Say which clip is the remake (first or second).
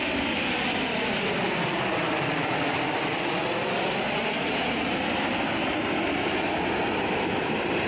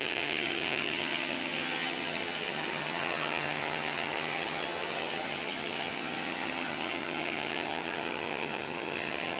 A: second